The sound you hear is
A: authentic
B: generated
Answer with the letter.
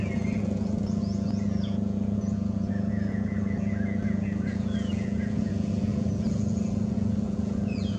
B